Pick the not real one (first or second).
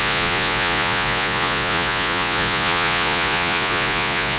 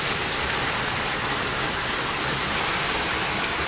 first